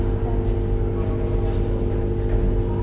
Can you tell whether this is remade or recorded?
recorded